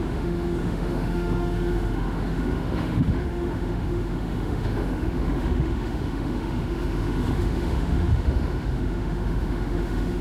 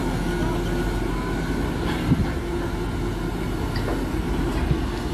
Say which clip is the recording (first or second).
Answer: second